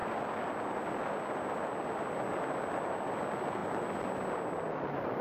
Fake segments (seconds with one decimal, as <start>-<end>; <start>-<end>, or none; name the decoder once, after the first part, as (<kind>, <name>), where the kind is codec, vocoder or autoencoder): none